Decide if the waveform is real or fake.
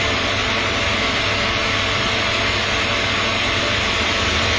real